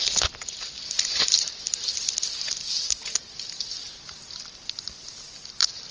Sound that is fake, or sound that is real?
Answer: real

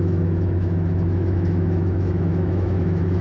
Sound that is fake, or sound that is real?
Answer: fake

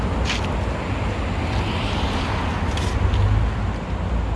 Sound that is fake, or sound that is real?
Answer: real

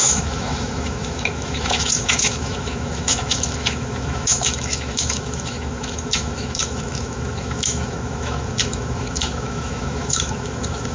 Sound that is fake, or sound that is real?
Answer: fake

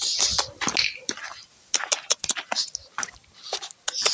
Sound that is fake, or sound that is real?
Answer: real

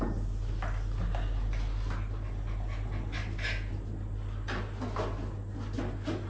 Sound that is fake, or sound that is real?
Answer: real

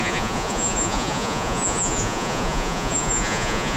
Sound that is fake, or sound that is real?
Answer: fake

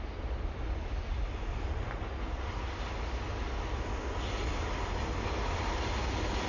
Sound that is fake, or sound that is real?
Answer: real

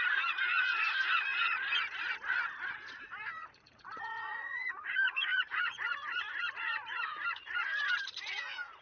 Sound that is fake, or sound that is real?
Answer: fake